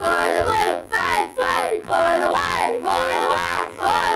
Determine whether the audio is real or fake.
fake